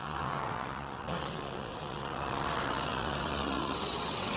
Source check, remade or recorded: remade